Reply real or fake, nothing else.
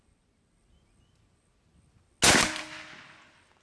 real